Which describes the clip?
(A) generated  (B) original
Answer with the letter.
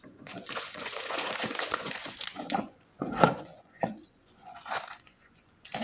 A